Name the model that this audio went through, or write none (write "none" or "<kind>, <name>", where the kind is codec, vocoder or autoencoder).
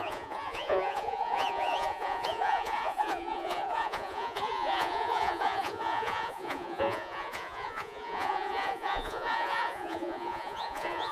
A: vocoder, Vocos